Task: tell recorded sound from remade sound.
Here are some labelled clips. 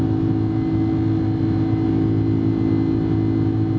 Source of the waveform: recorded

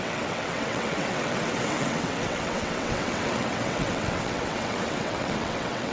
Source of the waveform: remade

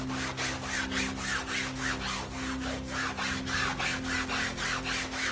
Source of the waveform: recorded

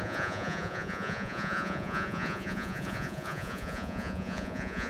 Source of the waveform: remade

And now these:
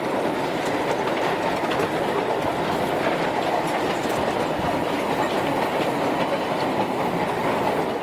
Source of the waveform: recorded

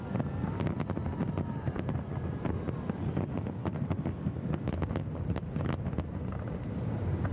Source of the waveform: recorded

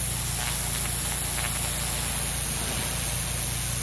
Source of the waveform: recorded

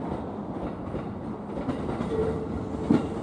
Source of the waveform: recorded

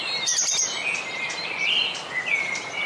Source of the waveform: recorded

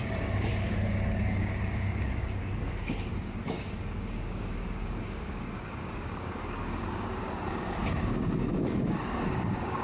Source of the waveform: remade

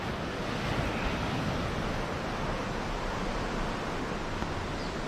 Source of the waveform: recorded